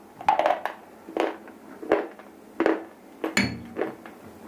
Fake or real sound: real